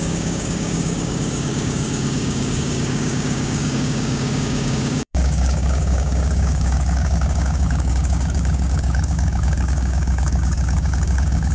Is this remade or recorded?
remade